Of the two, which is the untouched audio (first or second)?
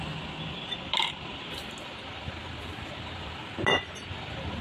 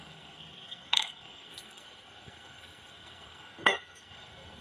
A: first